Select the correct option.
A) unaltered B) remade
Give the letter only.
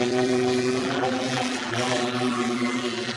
B